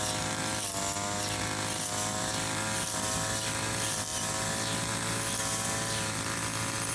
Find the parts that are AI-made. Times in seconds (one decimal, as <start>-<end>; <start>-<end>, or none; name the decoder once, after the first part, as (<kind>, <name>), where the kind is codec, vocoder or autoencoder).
none